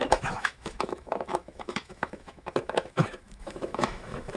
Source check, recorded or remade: remade